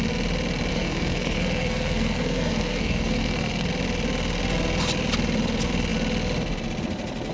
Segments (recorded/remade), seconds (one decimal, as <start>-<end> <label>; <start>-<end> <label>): 0.0-0.7 recorded; 0.7-3.7 remade; 3.7-7.3 recorded